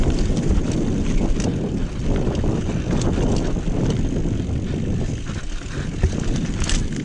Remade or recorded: recorded